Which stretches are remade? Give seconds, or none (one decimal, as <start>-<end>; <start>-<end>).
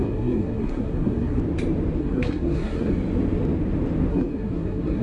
0.0-1.4; 2.0-2.9; 4.1-5.0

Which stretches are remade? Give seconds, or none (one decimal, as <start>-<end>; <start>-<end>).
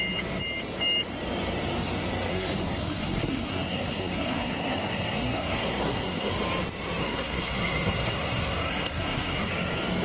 2.3-6.3; 7.0-9.5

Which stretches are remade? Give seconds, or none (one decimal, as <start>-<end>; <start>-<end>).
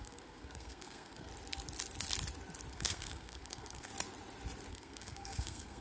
0.0-1.3; 2.7-3.9; 4.7-5.8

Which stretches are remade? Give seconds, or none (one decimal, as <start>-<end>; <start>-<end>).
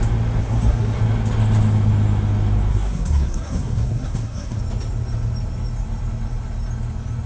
0.4-1.0; 2.7-4.6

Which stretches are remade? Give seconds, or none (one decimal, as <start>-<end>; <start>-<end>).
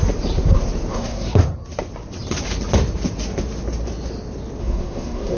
0.9-1.4; 4.6-5.4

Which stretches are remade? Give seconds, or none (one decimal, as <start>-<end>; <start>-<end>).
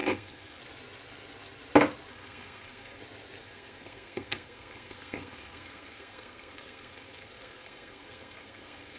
0.0-0.6; 2.1-3.0; 3.4-9.0